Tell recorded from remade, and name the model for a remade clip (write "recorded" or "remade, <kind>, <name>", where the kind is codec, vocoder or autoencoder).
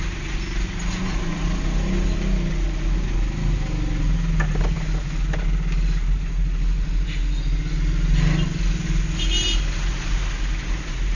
recorded